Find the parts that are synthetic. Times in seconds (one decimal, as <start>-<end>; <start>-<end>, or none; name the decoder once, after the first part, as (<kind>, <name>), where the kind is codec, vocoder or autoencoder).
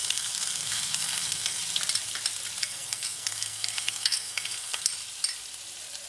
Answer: 0.0-1.6 (codec, SNAC); 2.6-4.9